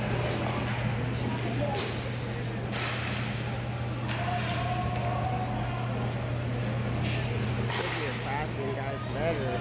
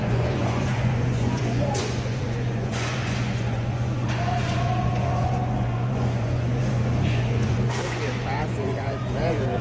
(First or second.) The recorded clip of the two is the first